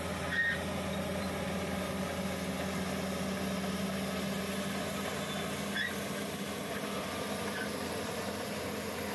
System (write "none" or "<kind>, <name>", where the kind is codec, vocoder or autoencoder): none